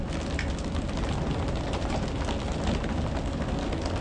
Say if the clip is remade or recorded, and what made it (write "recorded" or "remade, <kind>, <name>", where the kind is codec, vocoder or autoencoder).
recorded